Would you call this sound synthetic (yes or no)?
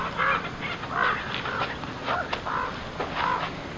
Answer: no